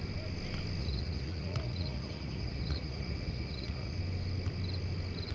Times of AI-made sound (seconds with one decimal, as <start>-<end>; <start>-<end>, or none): 0.8-4.0